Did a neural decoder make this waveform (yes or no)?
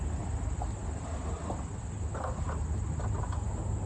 no